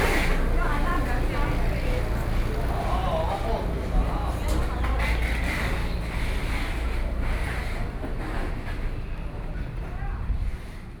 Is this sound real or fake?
real